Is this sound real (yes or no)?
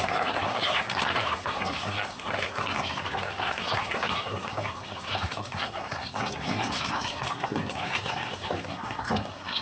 no